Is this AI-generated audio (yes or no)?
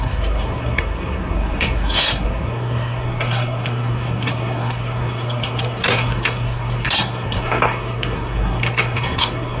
yes